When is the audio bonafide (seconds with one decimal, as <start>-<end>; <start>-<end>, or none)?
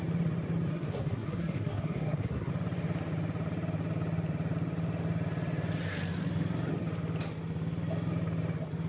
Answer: 0.0-0.7; 2.5-8.9